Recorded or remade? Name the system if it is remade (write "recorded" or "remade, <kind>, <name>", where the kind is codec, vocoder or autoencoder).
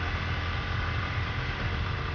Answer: recorded